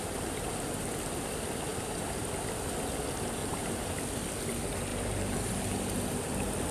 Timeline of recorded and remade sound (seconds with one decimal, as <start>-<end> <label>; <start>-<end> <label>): 0.0-3.4 recorded; 3.4-4.0 remade; 4.0-4.9 recorded; 4.9-5.7 remade; 5.7-6.7 recorded